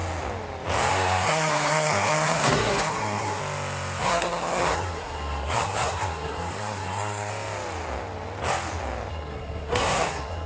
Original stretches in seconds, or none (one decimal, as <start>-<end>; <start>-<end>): 0.0-0.9; 3.4-4.0; 7.3-9.1